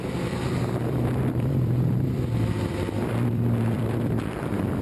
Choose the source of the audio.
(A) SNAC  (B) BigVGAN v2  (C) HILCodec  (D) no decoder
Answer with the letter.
B